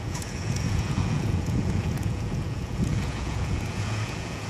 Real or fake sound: fake